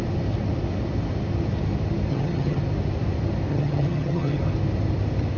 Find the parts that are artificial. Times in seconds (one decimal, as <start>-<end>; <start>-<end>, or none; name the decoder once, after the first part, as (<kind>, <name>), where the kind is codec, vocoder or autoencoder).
2.1-2.6 (vocoder, HiFi-GAN); 3.5-4.4